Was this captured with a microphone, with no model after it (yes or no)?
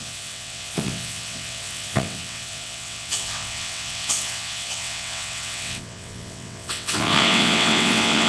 no